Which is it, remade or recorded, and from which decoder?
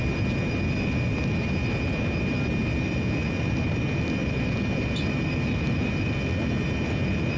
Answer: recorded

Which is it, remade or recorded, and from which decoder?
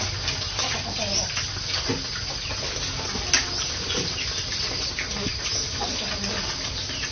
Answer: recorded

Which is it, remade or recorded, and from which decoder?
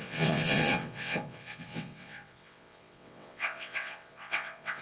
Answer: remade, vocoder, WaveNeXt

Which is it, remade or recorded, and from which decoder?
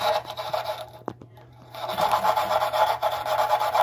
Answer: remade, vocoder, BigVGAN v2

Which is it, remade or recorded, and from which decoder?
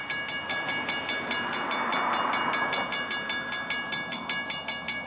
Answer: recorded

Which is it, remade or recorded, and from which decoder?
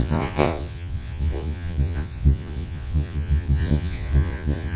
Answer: remade, vocoder, Vocos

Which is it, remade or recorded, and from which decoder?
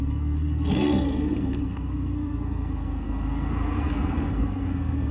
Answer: remade, codec, SNAC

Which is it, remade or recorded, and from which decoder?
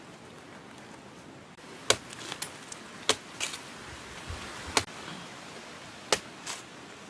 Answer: recorded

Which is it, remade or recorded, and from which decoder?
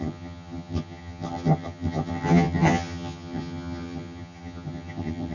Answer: remade, vocoder, HiFi-GAN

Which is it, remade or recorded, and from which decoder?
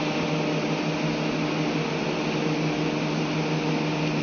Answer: recorded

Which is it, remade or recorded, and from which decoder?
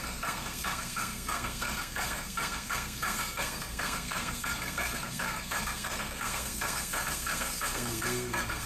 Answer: remade, codec, SNAC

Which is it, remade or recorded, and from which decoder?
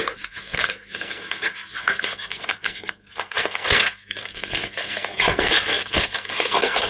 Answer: remade, codec, SNAC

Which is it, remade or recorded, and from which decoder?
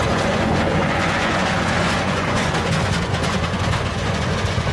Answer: remade, vocoder, Vocos